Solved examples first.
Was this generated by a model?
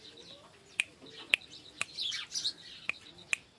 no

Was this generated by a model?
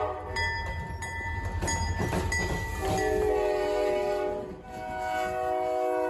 no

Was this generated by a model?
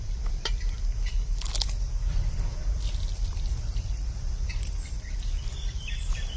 yes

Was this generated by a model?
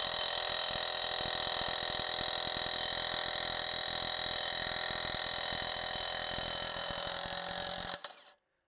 no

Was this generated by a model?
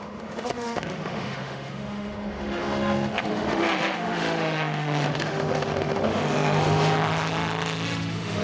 yes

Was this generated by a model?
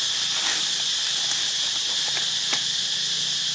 no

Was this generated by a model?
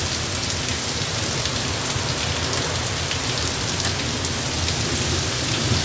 no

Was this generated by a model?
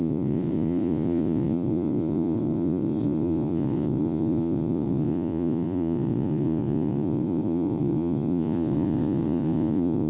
yes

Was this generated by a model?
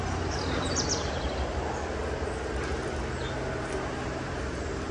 no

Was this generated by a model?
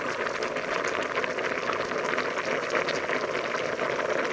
no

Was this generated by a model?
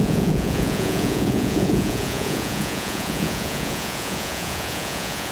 yes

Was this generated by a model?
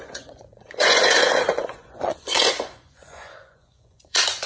yes